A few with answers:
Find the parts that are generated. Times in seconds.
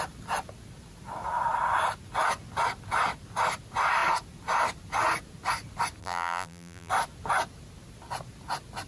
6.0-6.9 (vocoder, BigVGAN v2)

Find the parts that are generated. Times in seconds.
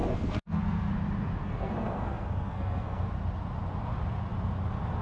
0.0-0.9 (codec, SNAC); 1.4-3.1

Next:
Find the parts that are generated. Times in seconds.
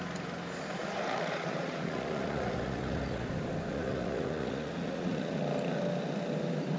0.8-3.3 (vocoder, Vocos); 3.7-5.4